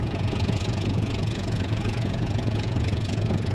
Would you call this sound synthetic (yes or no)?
yes